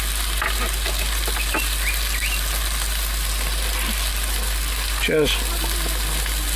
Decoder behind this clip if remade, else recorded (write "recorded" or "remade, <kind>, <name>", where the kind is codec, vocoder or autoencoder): recorded